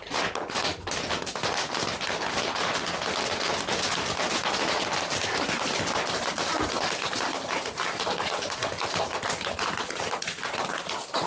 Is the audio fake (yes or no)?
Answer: no